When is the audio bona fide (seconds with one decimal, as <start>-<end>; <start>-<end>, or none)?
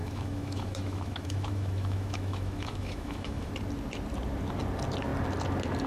3.5-5.9